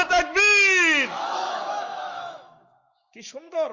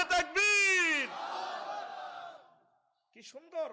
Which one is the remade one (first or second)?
first